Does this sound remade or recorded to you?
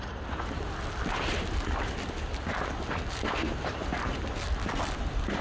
recorded